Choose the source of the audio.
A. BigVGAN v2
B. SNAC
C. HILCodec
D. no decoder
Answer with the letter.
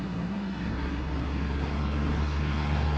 B